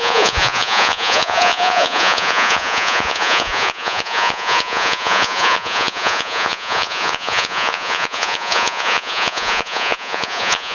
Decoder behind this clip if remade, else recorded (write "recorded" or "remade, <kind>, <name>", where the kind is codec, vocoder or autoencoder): remade, vocoder, Vocos